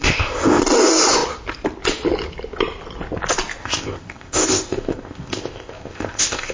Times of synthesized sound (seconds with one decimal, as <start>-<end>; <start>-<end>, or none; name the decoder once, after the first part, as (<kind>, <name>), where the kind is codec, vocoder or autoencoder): 0.0-0.6 (codec, ZipCodec); 3.6-6.5